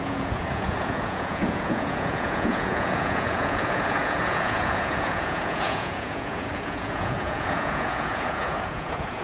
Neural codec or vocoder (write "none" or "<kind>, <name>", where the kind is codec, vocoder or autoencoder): vocoder, Vocos